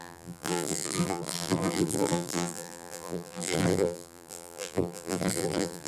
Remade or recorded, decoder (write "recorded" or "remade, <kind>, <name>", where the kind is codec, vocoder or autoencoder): remade, vocoder, BigVGAN v2